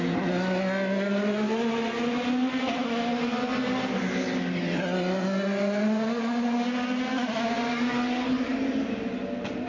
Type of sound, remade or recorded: recorded